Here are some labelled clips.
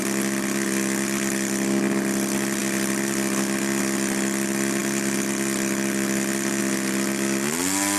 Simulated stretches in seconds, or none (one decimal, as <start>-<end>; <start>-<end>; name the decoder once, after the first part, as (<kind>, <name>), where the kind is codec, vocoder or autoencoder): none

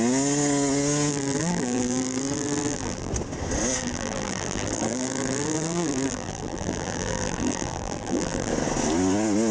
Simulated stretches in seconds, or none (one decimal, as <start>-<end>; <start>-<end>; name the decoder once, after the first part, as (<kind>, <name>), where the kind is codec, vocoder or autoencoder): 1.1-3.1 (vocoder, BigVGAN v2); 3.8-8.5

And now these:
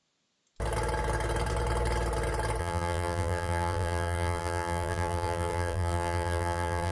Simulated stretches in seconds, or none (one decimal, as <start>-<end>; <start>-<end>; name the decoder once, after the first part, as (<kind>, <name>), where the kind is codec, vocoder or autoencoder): 2.6-6.9 (vocoder, BigVGAN v2)

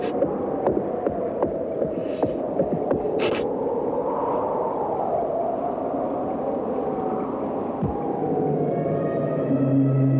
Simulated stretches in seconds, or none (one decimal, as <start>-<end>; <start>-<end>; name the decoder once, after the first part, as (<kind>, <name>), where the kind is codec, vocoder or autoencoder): 2.0-3.3 (vocoder, BigVGAN v2)